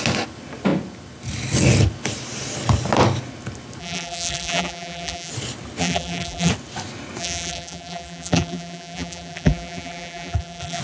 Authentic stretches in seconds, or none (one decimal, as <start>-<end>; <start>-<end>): 0.0-3.8; 5.3-5.8; 6.5-7.2